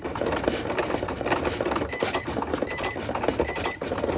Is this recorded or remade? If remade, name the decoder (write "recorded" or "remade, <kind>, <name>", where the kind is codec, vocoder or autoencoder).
remade, vocoder, BigVGAN v2